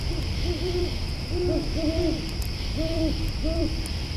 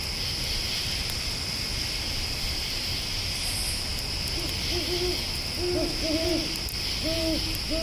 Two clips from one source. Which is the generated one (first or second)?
first